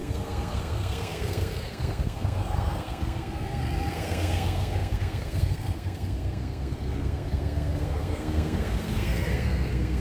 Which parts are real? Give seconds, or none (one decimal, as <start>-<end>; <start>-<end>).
none